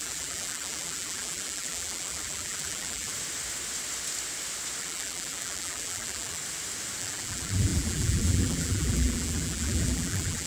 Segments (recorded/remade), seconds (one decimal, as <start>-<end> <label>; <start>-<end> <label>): 0.0-3.1 remade; 3.1-4.8 recorded; 4.8-6.4 remade; 6.4-7.0 recorded; 7.0-10.5 remade